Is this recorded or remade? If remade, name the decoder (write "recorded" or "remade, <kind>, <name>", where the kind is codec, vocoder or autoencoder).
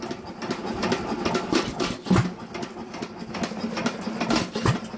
recorded